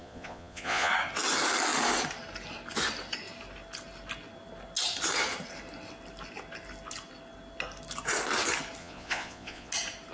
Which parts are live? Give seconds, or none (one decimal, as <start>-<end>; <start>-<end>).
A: 0.9-8.8; 9.7-10.1